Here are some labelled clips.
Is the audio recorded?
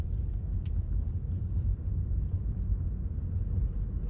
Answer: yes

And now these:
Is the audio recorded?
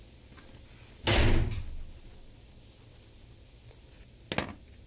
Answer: yes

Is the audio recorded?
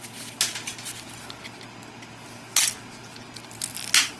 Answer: yes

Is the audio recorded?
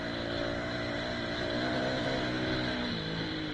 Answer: yes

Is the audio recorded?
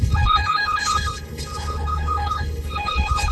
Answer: no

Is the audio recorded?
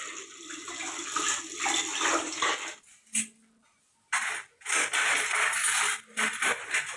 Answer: yes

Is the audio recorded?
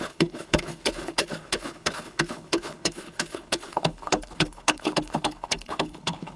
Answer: no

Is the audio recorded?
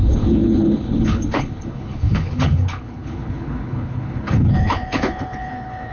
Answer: no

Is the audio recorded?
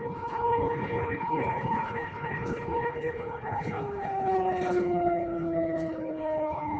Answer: no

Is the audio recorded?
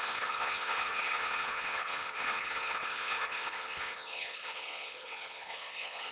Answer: no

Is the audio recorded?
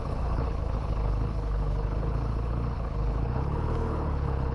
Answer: no